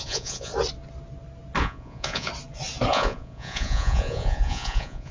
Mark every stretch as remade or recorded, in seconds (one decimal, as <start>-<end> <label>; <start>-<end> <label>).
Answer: 0.0-0.5 remade; 0.5-1.6 recorded; 1.6-2.3 remade; 2.3-2.9 recorded; 2.9-5.1 remade